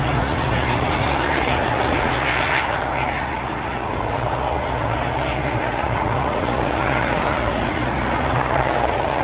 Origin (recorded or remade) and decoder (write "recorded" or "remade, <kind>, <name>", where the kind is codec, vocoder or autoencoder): remade, vocoder, Vocos